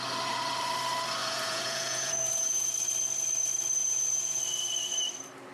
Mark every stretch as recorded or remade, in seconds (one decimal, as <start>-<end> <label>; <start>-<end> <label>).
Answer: 0.0-1.2 recorded; 1.2-2.7 remade; 2.7-3.8 recorded; 3.8-4.4 remade; 4.4-5.5 recorded